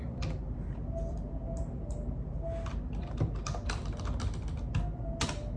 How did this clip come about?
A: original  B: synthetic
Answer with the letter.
A